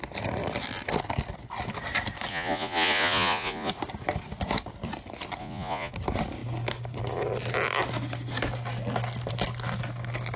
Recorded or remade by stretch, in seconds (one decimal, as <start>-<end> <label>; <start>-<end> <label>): 0.0-2.3 recorded; 2.3-3.7 remade; 3.7-5.4 recorded; 5.4-5.9 remade; 5.9-10.4 recorded